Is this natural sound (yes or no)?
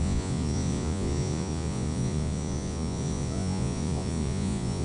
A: no